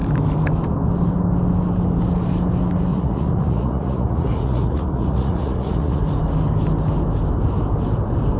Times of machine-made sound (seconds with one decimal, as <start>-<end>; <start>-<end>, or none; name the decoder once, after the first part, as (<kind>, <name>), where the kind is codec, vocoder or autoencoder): 2.9-6.0 (vocoder, Vocos)